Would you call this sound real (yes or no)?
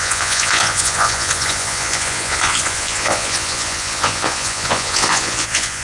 no